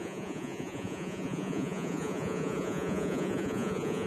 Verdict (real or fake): fake